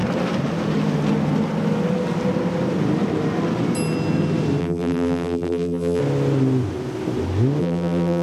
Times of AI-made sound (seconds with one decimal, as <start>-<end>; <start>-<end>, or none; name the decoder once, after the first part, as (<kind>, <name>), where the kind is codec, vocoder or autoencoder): 4.6-6.0 (vocoder, BigVGAN v2); 7.6-8.2